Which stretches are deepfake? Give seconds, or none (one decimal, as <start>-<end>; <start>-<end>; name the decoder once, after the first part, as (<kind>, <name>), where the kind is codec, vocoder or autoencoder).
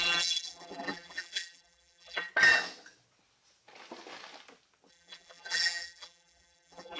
0.0-2.3 (vocoder, BigVGAN v2); 4.9-7.0